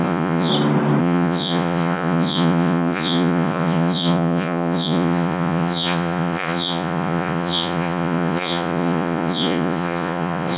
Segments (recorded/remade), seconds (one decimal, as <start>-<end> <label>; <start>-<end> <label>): 0.0-0.5 remade; 0.5-1.0 recorded; 1.0-10.6 remade